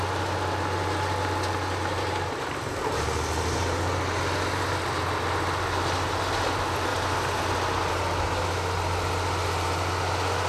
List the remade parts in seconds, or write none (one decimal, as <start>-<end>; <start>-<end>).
none